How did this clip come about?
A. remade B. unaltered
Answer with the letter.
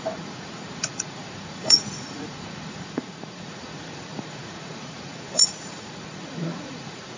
A